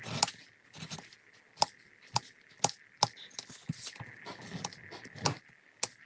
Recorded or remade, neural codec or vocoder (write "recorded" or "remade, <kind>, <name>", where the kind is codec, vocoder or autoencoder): recorded